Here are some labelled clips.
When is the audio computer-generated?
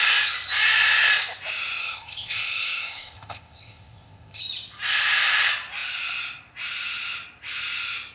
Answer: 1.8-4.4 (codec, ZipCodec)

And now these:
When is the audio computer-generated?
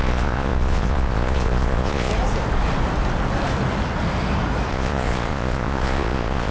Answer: 0.0-2.1 (vocoder, Vocos); 4.7-6.5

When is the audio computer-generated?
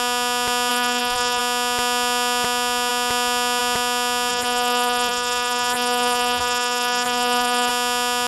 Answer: 0.7-1.4 (codec, SNAC); 4.3-7.7